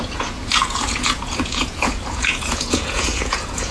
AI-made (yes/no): yes